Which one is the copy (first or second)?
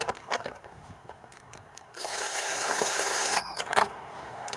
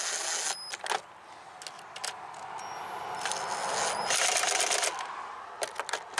first